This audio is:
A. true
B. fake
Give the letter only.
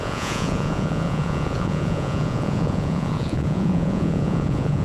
B